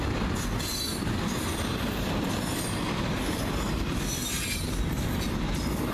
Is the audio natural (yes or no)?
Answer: yes